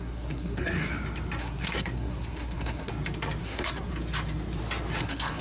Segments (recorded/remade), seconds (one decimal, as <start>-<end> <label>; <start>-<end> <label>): 0.0-0.9 remade; 0.9-1.4 recorded; 1.4-2.9 remade; 2.9-3.4 recorded; 3.4-3.9 remade; 3.9-5.0 recorded; 5.0-5.4 remade